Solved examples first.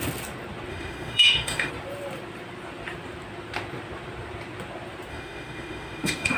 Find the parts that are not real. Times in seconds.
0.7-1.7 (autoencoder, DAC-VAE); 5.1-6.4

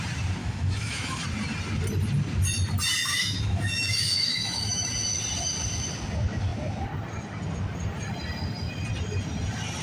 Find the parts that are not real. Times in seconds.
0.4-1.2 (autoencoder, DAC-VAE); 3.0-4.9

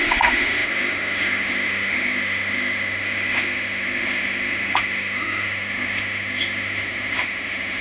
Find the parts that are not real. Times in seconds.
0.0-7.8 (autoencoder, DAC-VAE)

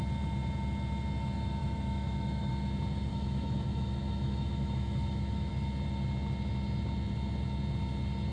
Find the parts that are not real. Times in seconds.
1.6-2.5 (autoencoder, DAC-VAE); 3.1-5.5

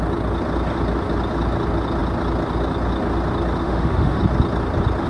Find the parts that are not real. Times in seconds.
3.6-4.2 (autoencoder, DAC-VAE)

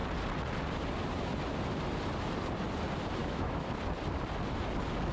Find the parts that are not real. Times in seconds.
3.2-3.7 (autoencoder, DAC-VAE)

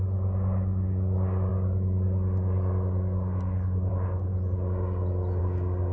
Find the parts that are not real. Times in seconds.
none

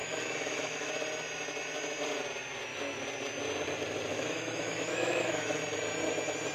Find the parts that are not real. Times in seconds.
0.0-0.9 (autoencoder, DAC-VAE); 4.1-5.6